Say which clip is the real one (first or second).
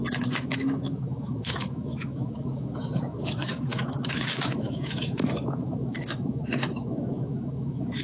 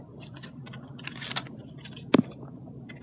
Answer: second